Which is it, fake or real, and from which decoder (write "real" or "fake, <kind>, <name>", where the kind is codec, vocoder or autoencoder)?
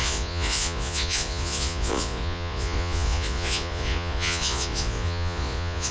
fake, vocoder, Vocos